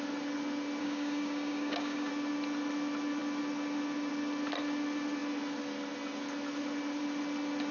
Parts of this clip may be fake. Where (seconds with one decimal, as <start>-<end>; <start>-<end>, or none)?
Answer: 0.8-2.1